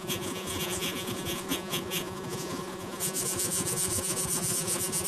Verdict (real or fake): fake